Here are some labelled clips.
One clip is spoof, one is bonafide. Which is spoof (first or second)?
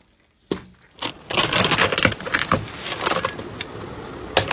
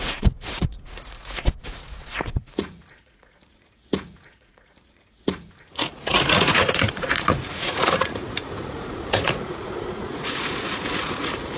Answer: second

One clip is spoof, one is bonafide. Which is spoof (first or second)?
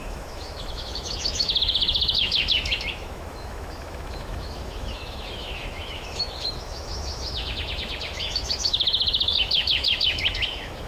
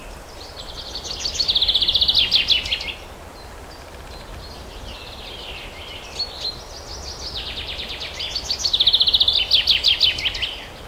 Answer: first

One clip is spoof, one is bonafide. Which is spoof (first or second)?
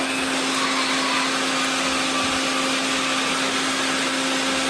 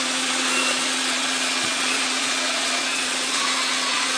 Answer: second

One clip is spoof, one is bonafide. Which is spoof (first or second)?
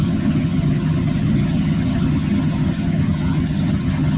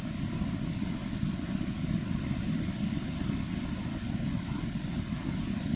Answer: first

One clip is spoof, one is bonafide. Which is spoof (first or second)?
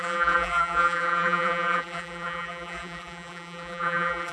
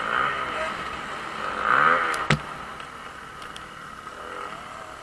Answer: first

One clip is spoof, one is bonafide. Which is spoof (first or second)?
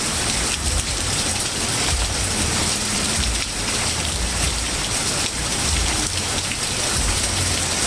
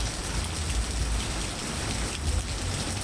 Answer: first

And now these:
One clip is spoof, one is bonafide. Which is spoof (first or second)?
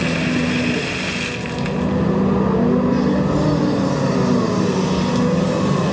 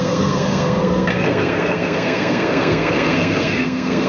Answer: second